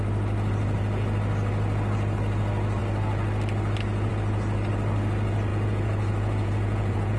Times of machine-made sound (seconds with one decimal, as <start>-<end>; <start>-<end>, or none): 5.5-7.2